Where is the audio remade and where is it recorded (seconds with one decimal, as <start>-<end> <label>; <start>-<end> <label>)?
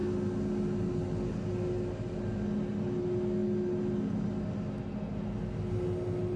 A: 0.0-6.4 recorded